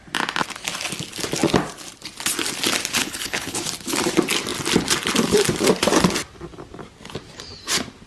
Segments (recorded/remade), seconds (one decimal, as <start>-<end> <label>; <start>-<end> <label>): 0.0-3.0 recorded; 3.0-3.6 remade; 3.6-8.1 recorded